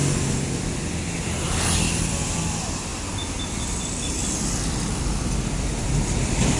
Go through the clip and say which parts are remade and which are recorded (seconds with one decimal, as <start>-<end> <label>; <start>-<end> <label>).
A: 0.0-1.5 recorded; 1.5-6.6 remade